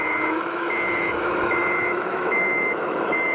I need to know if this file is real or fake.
fake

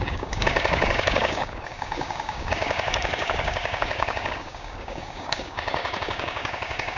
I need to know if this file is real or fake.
fake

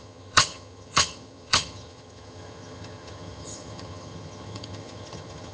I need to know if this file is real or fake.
fake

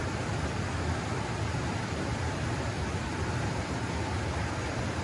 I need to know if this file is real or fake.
real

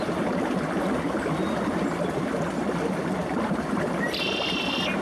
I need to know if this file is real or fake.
real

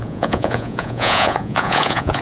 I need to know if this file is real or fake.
fake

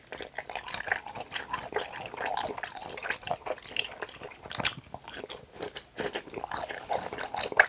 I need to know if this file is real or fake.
real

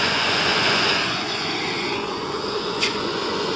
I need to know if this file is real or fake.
fake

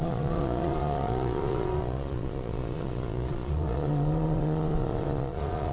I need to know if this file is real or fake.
fake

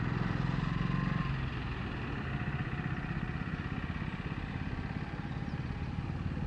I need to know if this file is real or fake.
real